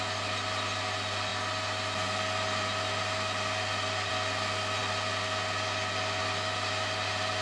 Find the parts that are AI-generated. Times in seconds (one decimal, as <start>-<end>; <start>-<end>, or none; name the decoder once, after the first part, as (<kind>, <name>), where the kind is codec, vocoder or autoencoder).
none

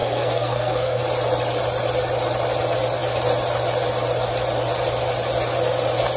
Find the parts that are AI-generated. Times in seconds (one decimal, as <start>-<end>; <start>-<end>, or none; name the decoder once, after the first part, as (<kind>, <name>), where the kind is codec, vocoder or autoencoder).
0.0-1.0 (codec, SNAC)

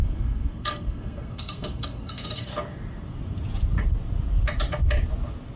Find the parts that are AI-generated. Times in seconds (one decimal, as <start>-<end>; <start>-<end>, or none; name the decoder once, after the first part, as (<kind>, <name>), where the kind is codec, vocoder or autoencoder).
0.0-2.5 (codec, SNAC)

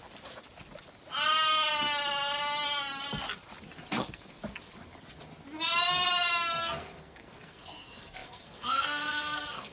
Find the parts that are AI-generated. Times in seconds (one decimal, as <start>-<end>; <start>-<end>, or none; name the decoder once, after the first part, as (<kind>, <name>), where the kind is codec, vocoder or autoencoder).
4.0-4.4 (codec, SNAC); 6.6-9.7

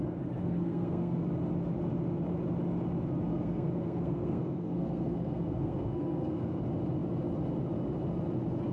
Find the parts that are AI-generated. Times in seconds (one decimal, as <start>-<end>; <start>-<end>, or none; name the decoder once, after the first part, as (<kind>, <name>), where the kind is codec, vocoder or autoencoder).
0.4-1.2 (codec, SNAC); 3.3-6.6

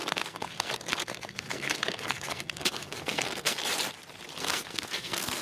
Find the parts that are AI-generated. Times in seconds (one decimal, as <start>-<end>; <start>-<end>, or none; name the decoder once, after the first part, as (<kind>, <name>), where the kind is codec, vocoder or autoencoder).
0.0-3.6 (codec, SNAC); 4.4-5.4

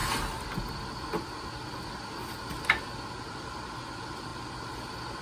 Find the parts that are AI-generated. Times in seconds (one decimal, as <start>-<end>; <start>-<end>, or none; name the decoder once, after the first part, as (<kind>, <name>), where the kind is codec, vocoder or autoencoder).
none

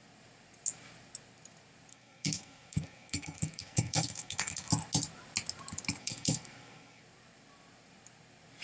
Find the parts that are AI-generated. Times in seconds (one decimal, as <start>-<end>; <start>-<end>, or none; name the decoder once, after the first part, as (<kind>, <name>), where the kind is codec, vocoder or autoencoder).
1.9-4.7 (codec, SNAC); 6.0-7.0